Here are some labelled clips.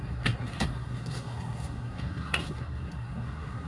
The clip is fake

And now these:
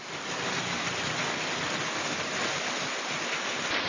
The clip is real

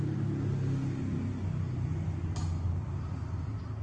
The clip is real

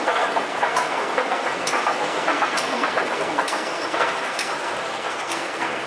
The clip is fake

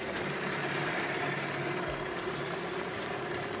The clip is real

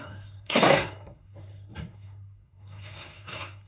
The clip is fake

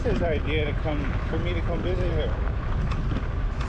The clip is real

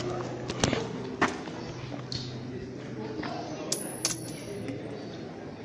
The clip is real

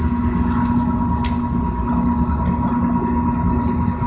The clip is real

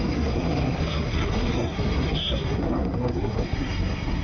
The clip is fake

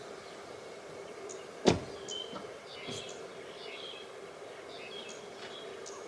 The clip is real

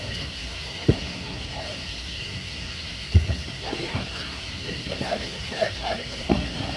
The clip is fake